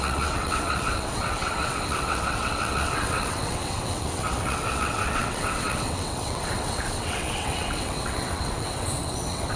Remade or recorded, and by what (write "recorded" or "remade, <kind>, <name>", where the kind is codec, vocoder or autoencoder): remade, vocoder, WaveNeXt